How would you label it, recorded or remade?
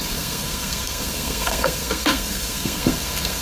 remade